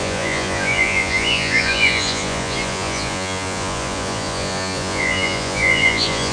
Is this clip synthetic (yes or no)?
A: yes